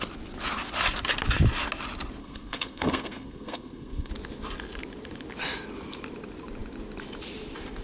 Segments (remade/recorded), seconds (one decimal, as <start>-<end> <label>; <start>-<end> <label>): 0.0-2.2 recorded; 2.2-4.1 remade; 4.1-7.8 recorded